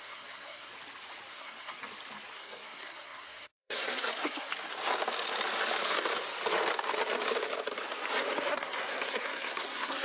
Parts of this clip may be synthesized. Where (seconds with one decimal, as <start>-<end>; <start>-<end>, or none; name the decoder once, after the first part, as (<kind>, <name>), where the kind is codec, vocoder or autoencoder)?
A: 0.0-0.7 (codec, SNAC); 1.3-1.8; 2.3-4.5; 8.5-10.0